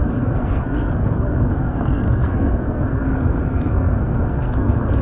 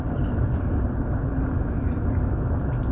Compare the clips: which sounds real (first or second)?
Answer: second